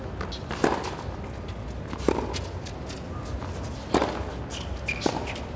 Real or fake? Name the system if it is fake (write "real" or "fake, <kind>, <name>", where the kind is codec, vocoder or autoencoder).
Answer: real